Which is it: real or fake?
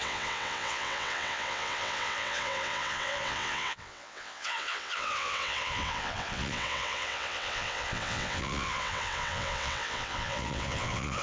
fake